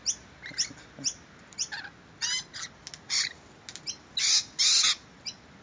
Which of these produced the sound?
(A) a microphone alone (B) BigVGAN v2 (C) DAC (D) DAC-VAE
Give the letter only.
A